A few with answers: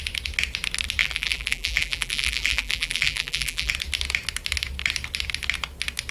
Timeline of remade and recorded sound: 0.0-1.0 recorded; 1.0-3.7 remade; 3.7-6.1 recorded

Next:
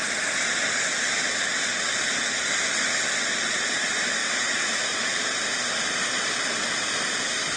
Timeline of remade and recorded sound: 0.0-4.2 recorded; 4.2-5.2 remade; 5.2-7.6 recorded

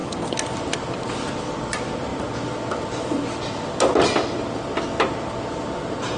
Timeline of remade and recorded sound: 0.0-6.2 recorded

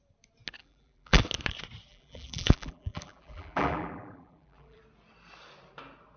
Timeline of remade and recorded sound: 0.0-0.6 recorded; 0.6-1.2 remade; 1.2-1.9 recorded; 1.9-4.8 remade; 4.8-6.2 recorded

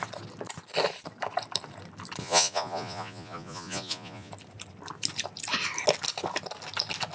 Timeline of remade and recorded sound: 0.0-2.2 recorded; 2.2-4.3 remade; 4.3-7.1 recorded

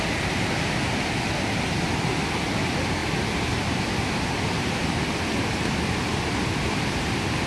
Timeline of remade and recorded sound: 0.0-7.5 recorded

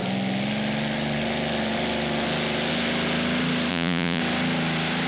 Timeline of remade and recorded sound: 0.0-3.7 recorded; 3.7-4.2 remade; 4.2-5.1 recorded